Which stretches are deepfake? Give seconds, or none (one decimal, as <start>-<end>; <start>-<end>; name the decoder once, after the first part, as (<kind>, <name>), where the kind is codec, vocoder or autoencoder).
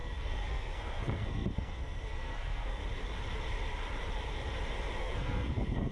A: 0.0-2.8 (codec, SNAC); 5.0-5.9